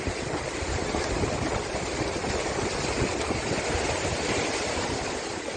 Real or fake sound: real